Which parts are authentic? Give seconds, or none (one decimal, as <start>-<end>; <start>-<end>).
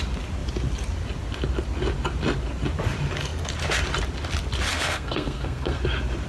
0.0-4.7; 5.8-6.3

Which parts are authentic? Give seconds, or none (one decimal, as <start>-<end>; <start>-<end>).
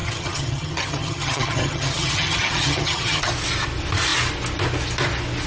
3.3-5.5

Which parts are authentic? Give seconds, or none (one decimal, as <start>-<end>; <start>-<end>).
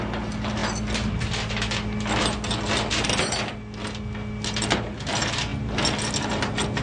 0.0-6.8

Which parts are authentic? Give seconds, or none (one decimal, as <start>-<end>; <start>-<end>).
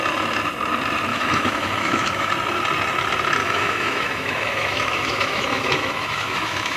0.0-1.1; 2.3-3.4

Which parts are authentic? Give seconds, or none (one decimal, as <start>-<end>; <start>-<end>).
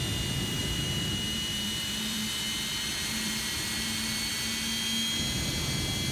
0.0-0.6; 4.3-6.1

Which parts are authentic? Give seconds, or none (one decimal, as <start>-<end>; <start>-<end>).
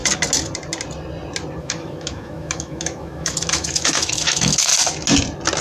0.0-1.6; 4.7-5.6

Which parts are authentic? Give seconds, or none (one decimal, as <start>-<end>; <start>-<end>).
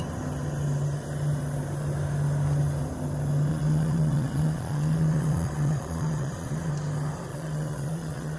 0.0-3.5; 6.7-7.3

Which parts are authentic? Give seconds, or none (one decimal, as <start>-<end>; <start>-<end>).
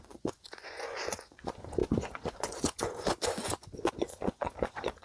none